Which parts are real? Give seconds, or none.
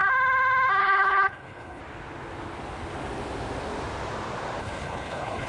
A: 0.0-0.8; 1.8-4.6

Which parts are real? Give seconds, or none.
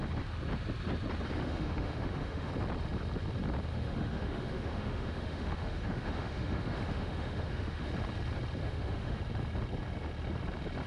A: 0.0-1.4; 2.5-3.7; 7.9-8.6; 9.2-10.9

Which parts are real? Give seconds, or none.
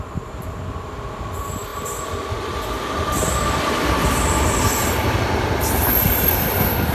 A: 0.0-6.9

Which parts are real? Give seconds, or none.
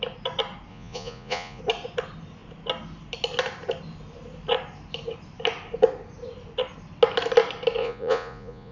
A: 0.0-0.7; 1.6-7.8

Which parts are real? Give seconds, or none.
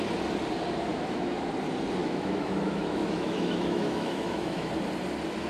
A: 0.0-0.9; 1.5-2.0; 4.7-5.5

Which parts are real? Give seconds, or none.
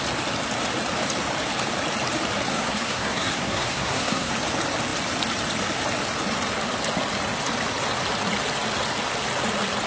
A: 0.0-2.5; 4.3-9.9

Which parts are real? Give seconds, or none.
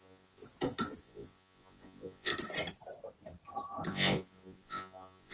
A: 0.4-1.0; 2.3-3.9